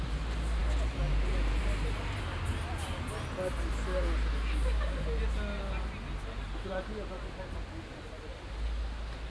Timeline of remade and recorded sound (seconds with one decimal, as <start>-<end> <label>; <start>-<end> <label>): 0.0-9.3 recorded